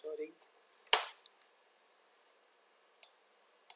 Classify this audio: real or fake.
real